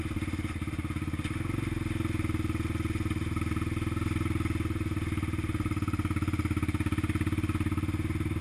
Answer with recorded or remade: recorded